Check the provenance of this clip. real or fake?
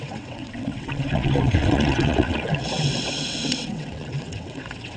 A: fake